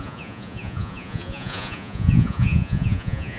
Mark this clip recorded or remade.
remade